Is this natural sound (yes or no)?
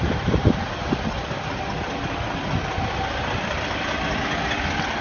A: yes